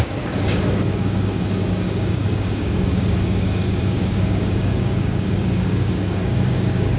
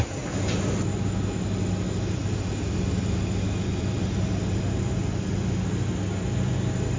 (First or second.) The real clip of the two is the second